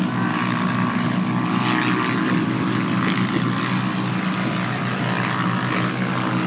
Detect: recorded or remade recorded